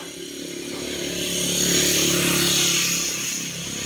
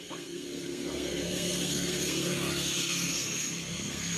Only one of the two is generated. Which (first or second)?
second